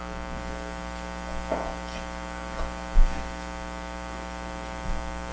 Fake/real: real